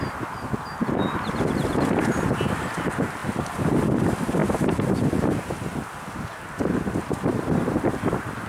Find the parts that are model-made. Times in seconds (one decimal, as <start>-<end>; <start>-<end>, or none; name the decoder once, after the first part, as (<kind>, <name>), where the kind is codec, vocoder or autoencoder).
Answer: none